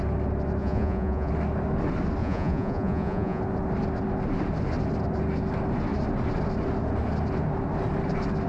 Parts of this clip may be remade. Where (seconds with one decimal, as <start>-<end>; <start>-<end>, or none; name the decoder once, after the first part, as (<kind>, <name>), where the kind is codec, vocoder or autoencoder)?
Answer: 0.6-1.3 (vocoder, Vocos); 2.2-3.4

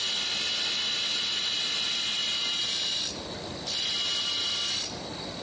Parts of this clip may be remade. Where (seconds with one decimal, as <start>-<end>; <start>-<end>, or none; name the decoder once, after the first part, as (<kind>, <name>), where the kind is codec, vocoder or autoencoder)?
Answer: none

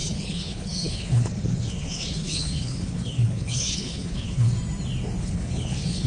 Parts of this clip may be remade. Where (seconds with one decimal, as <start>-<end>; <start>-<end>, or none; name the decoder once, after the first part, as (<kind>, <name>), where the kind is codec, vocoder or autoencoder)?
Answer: 0.0-4.5 (codec, HILCodec); 5.2-6.1